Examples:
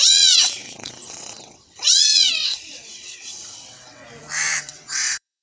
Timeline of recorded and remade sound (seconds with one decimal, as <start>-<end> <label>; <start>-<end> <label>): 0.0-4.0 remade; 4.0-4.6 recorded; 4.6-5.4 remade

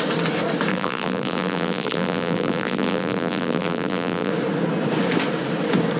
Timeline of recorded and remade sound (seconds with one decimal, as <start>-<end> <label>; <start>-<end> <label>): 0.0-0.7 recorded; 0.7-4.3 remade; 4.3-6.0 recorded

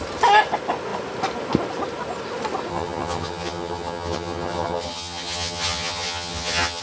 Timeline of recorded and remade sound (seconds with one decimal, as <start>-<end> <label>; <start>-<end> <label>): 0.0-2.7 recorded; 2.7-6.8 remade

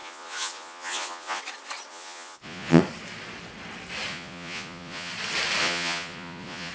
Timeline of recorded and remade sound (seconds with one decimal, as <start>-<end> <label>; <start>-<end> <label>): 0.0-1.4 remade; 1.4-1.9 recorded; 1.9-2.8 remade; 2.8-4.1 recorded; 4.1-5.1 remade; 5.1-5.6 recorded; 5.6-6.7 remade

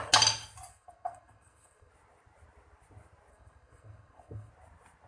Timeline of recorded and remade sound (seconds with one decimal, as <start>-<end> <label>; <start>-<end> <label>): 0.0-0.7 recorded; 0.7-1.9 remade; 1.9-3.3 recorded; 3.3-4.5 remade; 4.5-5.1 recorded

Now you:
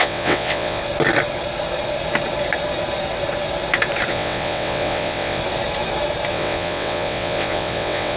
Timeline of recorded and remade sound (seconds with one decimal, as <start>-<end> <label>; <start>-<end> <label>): 0.0-0.8 remade; 0.8-4.1 recorded; 4.1-5.4 remade; 5.4-6.3 recorded; 6.3-8.2 remade

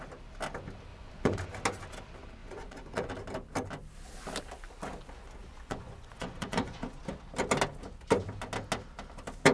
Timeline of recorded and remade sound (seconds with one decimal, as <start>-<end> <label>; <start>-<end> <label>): 0.0-0.9 recorded; 0.9-1.5 remade; 1.5-2.4 recorded; 2.4-3.1 remade; 3.1-5.4 recorded; 5.4-7.0 remade; 7.0-9.5 recorded